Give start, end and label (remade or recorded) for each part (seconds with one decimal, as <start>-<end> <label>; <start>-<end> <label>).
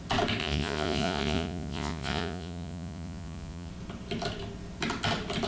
0.0-0.4 recorded; 0.4-3.7 remade; 3.7-5.5 recorded